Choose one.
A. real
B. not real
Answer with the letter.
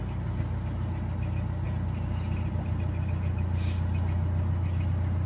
A